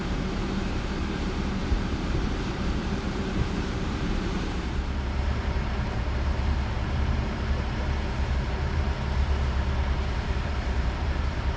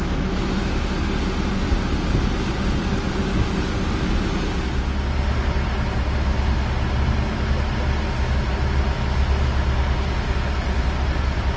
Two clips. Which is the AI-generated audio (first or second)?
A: first